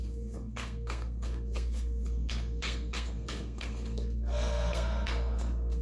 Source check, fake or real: fake